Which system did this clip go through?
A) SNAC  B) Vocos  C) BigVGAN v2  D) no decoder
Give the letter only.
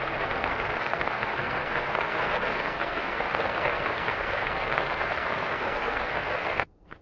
A